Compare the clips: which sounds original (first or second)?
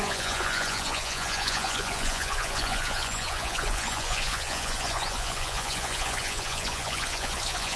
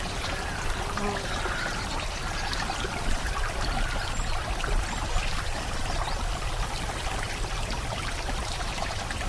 second